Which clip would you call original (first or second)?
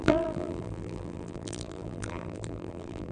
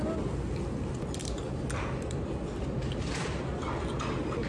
second